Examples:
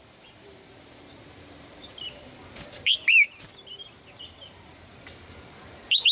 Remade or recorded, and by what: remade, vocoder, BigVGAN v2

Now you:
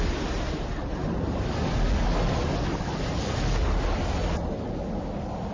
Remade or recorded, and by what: recorded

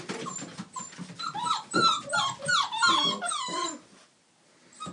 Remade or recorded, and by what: recorded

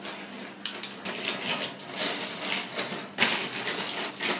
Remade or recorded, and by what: recorded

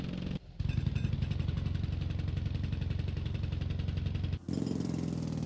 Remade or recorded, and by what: recorded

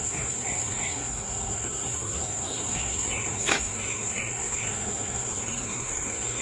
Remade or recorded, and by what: remade, codec, SNAC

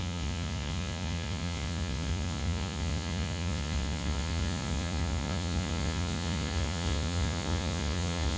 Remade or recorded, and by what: remade, vocoder, Vocos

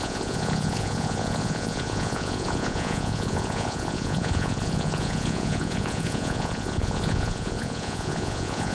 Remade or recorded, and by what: remade, vocoder, Vocos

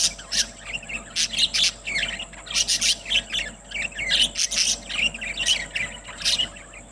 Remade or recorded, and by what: recorded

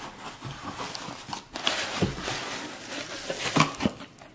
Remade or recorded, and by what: recorded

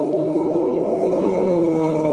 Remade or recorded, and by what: remade, codec, SNAC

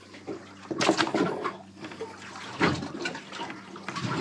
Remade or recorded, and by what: recorded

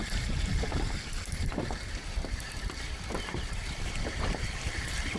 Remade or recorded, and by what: remade, vocoder, BigVGAN v2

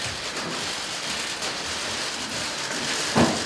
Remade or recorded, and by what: recorded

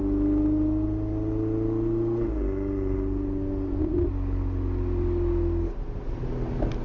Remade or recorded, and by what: recorded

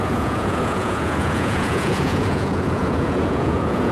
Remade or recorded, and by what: remade, vocoder, Vocos